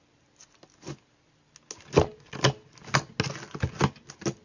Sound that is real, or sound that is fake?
real